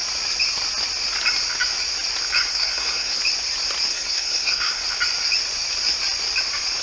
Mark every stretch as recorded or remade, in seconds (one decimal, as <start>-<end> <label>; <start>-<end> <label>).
0.0-2.5 recorded; 2.5-3.2 remade; 3.2-3.9 recorded; 3.9-4.8 remade; 4.8-6.8 recorded

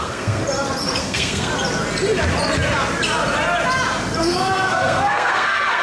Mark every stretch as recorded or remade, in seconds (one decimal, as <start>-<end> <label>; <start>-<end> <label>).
0.0-0.4 remade; 0.4-1.0 recorded; 1.0-1.5 remade; 1.5-4.2 recorded; 4.2-5.8 remade

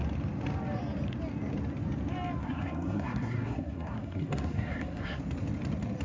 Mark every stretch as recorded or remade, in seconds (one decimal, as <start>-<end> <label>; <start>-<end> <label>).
0.0-2.4 recorded; 2.4-5.2 remade; 5.2-6.0 recorded

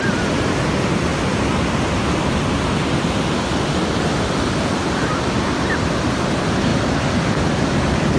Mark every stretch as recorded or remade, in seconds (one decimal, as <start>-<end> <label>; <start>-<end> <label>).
0.0-8.2 recorded

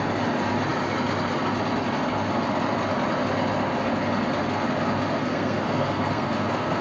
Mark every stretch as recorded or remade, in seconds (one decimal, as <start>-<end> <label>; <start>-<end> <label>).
0.0-5.2 recorded; 5.2-6.8 remade

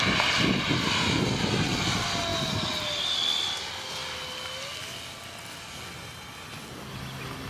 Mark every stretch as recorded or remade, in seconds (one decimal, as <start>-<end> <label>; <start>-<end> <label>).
0.0-7.5 recorded

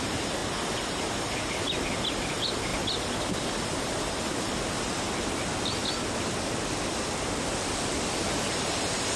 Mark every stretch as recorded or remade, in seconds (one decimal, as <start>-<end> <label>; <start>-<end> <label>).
0.0-9.2 recorded